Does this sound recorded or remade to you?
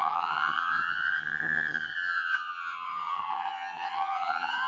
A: remade